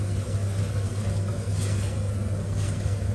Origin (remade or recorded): remade